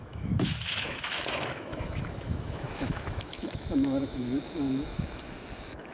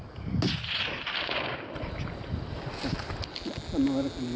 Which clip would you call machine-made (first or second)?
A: first